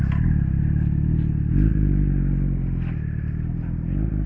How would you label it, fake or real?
real